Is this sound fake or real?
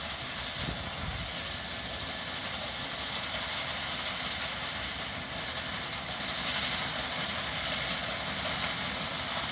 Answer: real